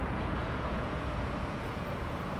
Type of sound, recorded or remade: remade